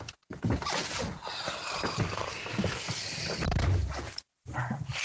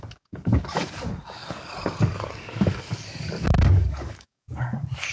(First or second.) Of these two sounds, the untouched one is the first